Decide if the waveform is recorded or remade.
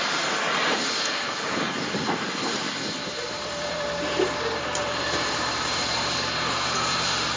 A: remade